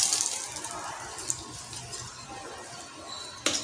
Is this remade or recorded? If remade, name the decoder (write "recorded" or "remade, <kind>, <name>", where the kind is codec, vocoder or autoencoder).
recorded